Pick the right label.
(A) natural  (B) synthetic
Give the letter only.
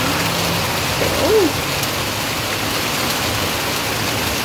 A